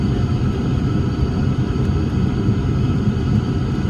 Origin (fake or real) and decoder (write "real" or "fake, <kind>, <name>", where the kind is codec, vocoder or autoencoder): real